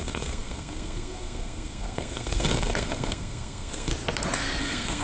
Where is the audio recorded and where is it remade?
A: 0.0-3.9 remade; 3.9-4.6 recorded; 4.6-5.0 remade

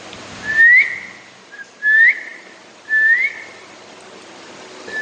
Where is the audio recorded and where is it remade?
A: 0.0-5.0 recorded

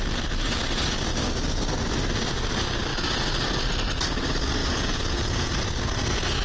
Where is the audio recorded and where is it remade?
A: 0.0-4.6 recorded; 4.6-5.5 remade; 5.5-6.4 recorded

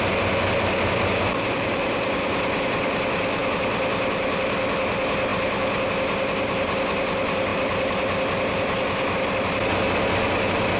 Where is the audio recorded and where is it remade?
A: 0.0-10.8 recorded

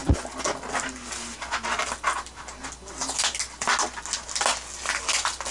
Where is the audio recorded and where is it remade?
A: 0.0-5.5 recorded

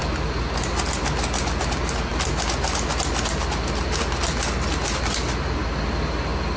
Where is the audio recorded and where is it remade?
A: 0.0-6.6 recorded

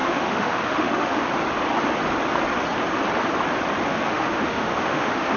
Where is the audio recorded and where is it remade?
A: 0.0-1.2 remade; 1.2-3.9 recorded; 3.9-5.4 remade

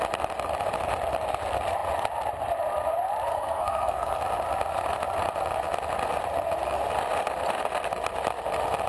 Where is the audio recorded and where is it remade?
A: 0.0-3.3 recorded; 3.3-4.2 remade; 4.2-8.9 recorded